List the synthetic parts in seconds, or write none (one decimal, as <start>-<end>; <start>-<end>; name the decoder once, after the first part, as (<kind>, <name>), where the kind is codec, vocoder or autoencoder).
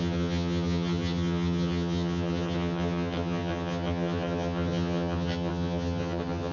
0.0-6.5 (vocoder, HiFi-GAN)